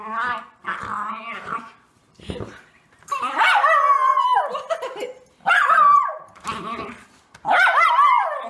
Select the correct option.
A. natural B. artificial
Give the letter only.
A